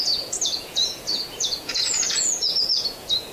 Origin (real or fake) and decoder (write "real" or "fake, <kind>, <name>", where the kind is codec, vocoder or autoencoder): fake, vocoder, Vocos